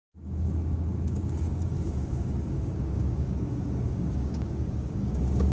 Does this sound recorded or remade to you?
remade